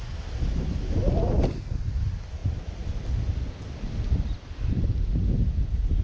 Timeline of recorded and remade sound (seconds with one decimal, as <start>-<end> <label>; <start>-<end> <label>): 0.0-6.0 recorded